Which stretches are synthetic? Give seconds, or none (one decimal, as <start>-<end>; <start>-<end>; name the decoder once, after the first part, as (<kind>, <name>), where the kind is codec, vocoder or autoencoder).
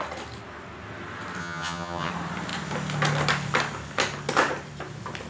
1.4-2.1 (vocoder, HiFi-GAN)